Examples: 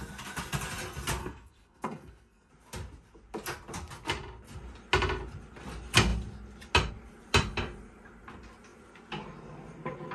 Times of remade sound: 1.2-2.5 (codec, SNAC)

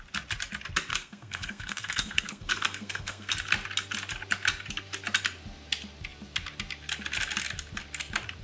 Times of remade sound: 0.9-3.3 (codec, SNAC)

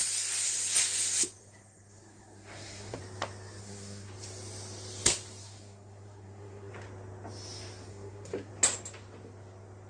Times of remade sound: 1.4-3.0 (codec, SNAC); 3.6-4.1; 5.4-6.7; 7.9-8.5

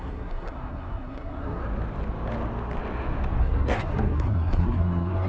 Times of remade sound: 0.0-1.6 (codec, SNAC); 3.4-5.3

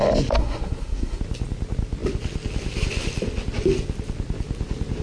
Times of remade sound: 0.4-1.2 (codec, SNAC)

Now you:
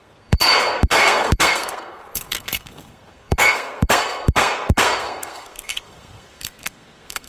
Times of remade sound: 0.0-7.3 (codec, SNAC)

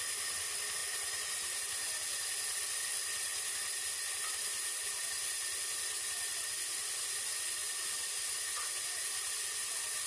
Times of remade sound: none

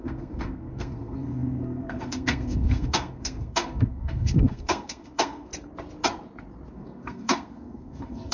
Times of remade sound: 0.0-5.5 (codec, SNAC); 6.7-8.3